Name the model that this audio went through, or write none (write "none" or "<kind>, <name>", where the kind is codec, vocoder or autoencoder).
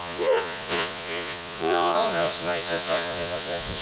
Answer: vocoder, Vocos